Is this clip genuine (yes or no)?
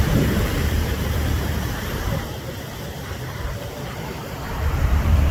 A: no